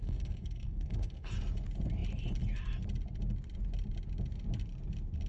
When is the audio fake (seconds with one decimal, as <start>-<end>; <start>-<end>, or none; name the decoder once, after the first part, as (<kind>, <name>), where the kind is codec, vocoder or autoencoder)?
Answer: 0.0-1.3 (codec, SNAC)